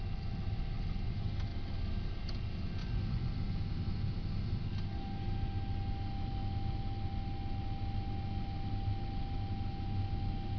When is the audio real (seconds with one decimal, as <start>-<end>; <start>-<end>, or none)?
0.0-2.8; 3.3-10.6